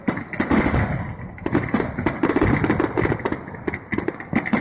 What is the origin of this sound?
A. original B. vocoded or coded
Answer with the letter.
A